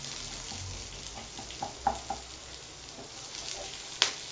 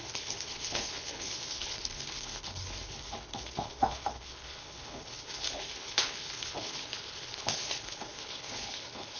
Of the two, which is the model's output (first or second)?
second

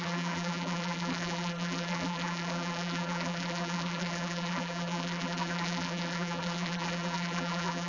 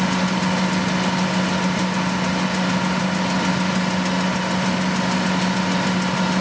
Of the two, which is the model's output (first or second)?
first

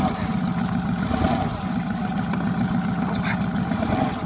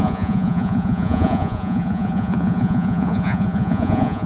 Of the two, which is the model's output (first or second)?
second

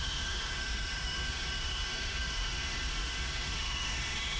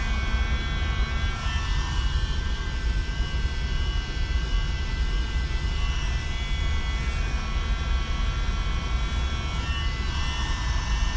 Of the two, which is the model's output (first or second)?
first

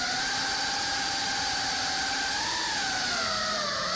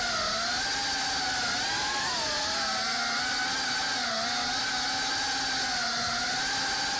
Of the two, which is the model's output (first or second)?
first